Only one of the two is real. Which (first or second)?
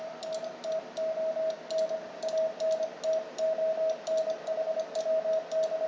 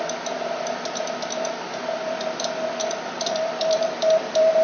first